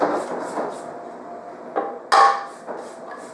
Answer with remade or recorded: recorded